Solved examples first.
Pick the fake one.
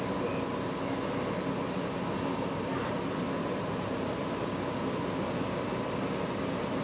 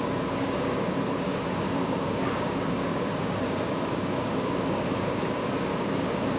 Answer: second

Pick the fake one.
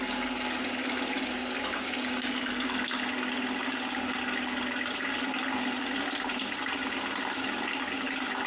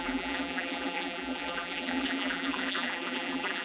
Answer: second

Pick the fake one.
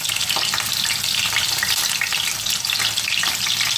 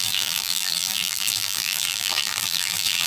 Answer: second